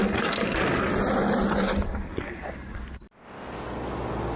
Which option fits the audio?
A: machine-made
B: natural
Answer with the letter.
B